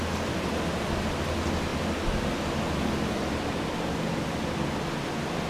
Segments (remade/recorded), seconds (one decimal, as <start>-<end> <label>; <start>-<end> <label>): 0.0-5.5 recorded